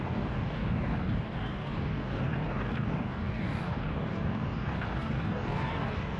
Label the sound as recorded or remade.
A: remade